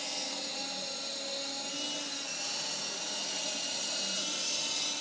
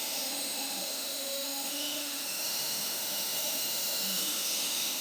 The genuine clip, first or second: first